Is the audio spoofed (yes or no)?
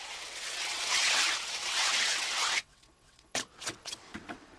yes